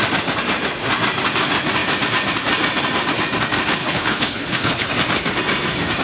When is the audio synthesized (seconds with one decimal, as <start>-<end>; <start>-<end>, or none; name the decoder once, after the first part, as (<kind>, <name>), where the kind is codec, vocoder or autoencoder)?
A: 3.8-4.9 (codec, HILCodec)